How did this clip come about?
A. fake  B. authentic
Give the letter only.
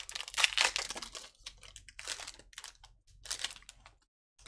B